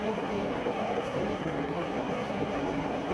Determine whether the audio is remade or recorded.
remade